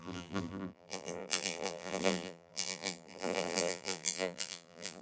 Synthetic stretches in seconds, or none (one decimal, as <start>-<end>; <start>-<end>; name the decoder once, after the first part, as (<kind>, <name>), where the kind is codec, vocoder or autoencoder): 0.0-5.0 (vocoder, BigVGAN v2)